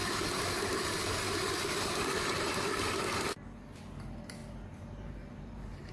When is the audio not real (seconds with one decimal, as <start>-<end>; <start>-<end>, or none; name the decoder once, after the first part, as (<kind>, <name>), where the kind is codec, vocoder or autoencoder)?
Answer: 4.4-5.9 (vocoder, BigVGAN v2)

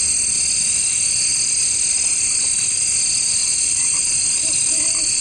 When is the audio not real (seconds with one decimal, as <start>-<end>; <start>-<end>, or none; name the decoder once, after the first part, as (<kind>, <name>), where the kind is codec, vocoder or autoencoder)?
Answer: 3.4-4.1 (vocoder, BigVGAN v2)